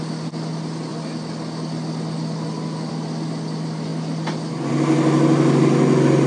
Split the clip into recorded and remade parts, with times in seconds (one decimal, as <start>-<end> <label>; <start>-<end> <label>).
0.0-6.3 recorded